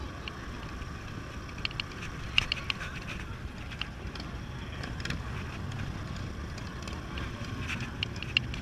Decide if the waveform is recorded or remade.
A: recorded